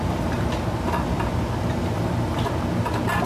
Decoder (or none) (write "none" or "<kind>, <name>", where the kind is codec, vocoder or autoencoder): none